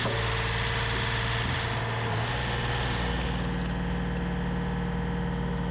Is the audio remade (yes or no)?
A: no